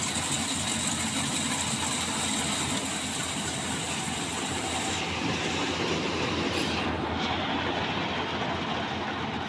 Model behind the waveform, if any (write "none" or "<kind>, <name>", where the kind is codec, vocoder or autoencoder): none